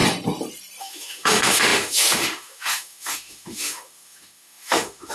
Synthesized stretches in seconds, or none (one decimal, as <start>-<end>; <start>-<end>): 0.8-5.1